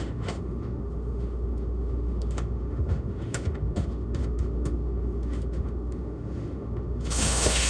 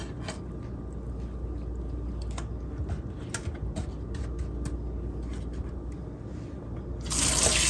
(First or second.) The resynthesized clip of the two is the first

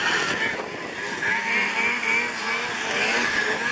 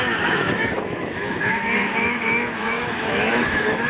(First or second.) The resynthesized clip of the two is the second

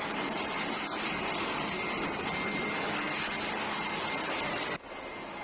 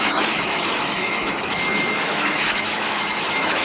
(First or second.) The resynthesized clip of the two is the second